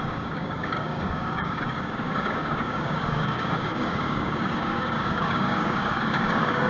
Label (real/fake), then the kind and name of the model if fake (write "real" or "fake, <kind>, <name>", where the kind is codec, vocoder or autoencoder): fake, codec, DAC